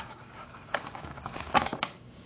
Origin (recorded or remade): remade